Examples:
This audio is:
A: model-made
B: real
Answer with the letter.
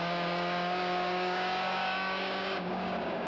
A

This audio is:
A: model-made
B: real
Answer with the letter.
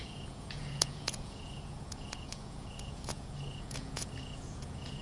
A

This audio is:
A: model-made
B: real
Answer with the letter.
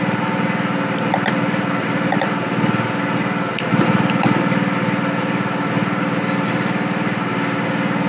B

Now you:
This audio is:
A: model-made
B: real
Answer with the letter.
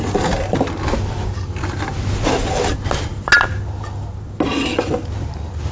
B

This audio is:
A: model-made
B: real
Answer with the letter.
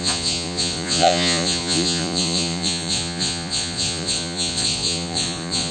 A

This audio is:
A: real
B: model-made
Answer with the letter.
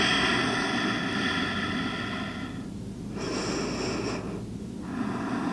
A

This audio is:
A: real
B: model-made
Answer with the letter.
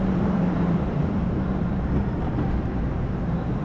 B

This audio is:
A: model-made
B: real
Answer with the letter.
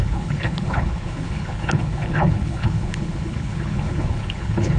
A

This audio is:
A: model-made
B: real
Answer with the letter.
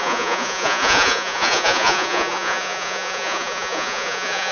A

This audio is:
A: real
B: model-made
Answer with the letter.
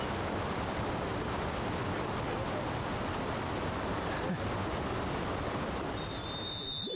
A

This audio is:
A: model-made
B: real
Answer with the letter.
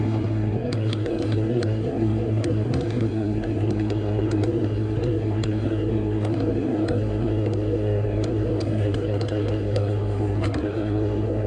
A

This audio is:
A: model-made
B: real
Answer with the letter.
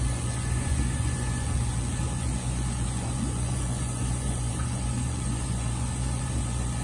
A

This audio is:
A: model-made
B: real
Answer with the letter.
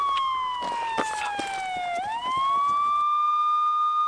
B